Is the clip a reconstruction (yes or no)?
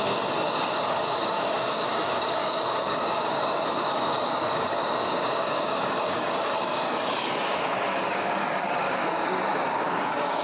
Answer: yes